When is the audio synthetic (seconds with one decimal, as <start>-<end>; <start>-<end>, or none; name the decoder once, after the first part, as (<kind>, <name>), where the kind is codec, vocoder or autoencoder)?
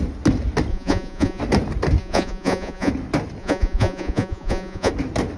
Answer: 0.7-1.4 (vocoder, Vocos); 2.0-2.9; 3.4-4.9